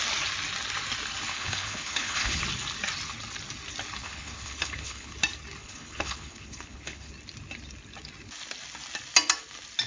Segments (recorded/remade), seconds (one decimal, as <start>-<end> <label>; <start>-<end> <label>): 0.0-1.3 recorded; 1.3-2.4 remade; 2.4-4.0 recorded; 4.0-5.1 remade; 5.1-5.6 recorded; 5.6-7.1 remade; 7.1-9.9 recorded